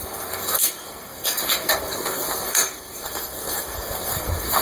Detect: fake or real fake